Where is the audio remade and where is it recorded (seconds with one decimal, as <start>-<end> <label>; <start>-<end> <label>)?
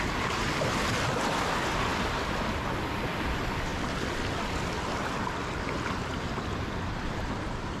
0.0-7.8 recorded